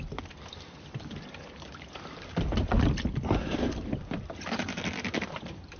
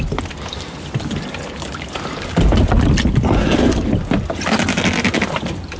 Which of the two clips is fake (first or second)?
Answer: first